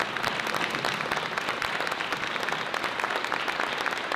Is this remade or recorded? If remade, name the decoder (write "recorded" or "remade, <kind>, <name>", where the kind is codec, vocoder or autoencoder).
recorded